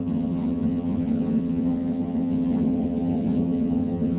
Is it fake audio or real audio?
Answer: fake